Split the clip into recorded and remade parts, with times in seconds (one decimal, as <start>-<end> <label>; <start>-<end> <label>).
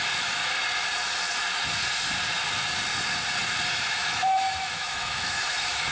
0.0-0.4 remade; 0.4-3.9 recorded; 3.9-5.9 remade